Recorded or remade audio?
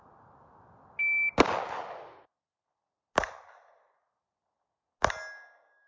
recorded